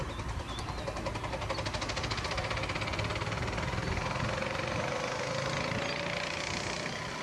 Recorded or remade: recorded